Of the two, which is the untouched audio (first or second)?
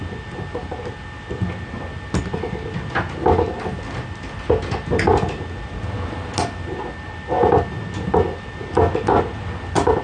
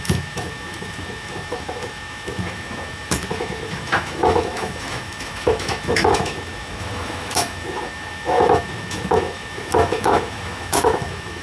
first